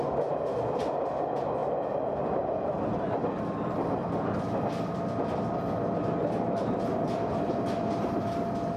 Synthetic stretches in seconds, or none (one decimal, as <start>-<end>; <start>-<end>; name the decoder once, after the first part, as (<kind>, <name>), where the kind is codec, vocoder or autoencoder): none